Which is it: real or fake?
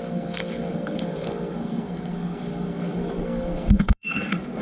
fake